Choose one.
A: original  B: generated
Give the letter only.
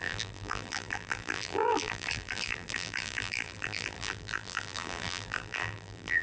B